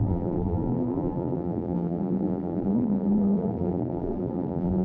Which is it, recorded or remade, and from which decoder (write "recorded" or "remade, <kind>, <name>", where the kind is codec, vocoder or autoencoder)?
remade, vocoder, BigVGAN v2